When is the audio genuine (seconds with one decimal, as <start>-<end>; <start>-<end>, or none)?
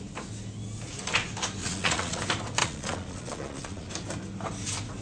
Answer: 0.0-1.6; 2.2-2.6; 3.9-5.0